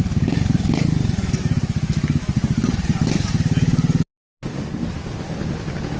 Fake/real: real